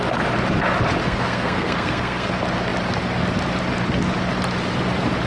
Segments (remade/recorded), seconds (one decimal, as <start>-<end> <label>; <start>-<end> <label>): 0.0-1.0 recorded; 1.0-2.3 remade; 2.3-5.3 recorded